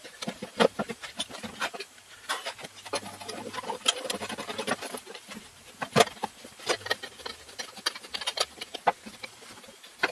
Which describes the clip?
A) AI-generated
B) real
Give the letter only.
A